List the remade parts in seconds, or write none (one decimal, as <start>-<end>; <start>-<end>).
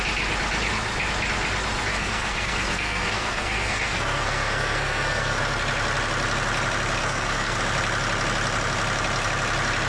1.9-5.4; 7.0-7.6